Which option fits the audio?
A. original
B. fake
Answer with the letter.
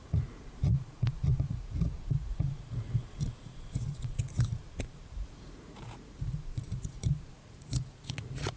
B